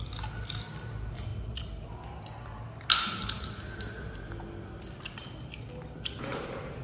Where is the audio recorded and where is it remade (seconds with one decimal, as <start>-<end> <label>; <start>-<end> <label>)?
0.0-6.8 recorded